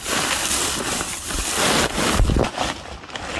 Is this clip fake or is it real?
real